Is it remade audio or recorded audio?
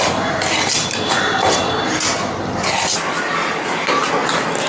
recorded